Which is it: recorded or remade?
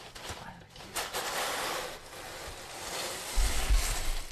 remade